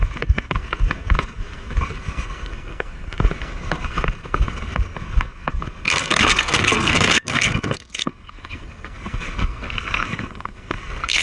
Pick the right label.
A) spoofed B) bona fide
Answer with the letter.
A